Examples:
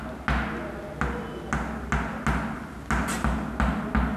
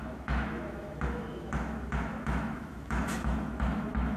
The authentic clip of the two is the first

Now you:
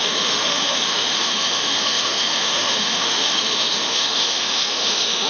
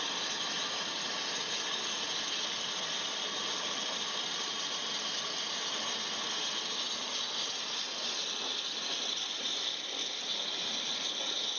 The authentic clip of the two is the second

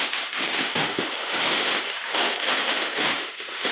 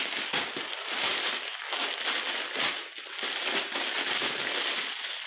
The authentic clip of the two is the second